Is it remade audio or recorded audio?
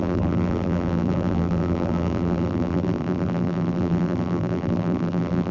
remade